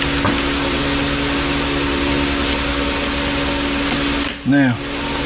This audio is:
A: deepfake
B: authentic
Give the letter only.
B